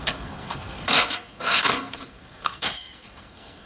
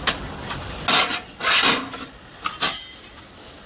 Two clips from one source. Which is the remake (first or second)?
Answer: first